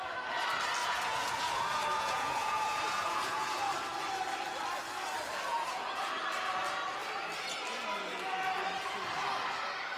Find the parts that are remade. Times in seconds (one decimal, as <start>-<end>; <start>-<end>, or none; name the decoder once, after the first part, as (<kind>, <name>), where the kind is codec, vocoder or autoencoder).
0.8-3.7 (vocoder, Vocos); 5.5-6.1

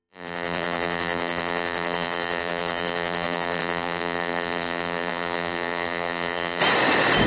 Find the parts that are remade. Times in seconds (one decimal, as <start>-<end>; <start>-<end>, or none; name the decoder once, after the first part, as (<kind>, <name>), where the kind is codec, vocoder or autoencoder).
0.0-6.6 (vocoder, BigVGAN v2)

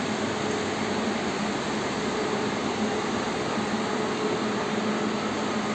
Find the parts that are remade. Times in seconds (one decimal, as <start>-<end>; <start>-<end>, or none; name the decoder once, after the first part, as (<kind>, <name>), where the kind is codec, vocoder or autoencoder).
none

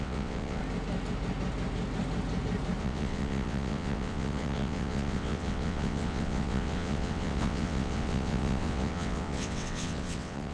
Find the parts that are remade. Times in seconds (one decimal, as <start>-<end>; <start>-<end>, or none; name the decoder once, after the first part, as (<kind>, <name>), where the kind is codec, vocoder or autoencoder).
0.0-0.6 (vocoder, WaveNeXt); 2.8-10.5